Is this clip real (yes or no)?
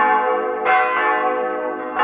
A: yes